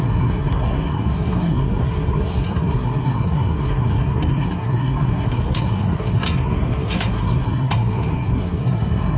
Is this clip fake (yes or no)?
yes